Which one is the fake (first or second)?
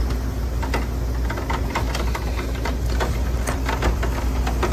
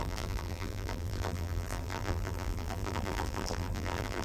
second